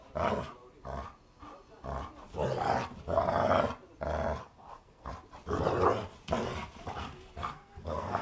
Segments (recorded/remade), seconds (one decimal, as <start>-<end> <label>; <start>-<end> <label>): 0.0-4.4 recorded; 4.4-5.1 remade; 5.1-7.0 recorded; 7.0-8.2 remade

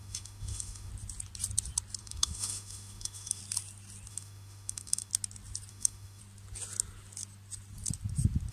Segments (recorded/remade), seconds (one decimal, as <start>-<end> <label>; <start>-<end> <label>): 0.0-0.9 remade; 0.9-2.0 recorded; 2.0-3.4 remade; 3.4-4.1 recorded; 4.1-5.1 remade; 5.1-5.7 recorded; 5.7-6.2 remade; 6.2-8.5 recorded

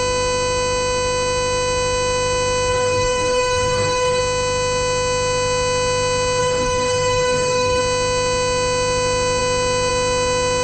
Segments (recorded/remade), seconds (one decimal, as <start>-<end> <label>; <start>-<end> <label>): 0.0-2.7 recorded; 2.7-4.2 remade; 4.2-6.4 recorded; 6.4-7.8 remade; 7.8-10.6 recorded

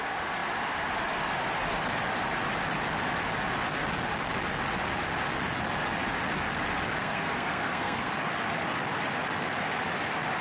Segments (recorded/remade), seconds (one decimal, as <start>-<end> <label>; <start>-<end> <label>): 0.0-7.0 recorded; 7.0-8.1 remade; 8.1-10.4 recorded

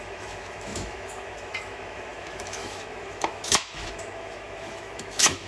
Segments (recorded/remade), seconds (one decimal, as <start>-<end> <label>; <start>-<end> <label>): 0.0-5.5 remade

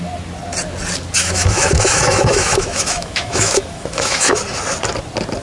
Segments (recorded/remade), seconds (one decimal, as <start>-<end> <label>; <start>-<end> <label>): 0.0-1.2 recorded; 1.2-4.4 remade; 4.4-5.4 recorded

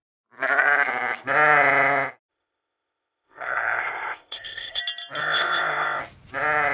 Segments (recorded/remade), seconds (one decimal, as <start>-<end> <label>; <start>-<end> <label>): 0.0-2.3 recorded; 2.3-4.8 remade; 4.8-5.2 recorded; 5.2-6.0 remade; 6.0-6.7 recorded

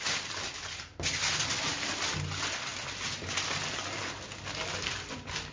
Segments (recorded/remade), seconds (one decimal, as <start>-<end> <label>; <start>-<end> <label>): 0.0-5.5 recorded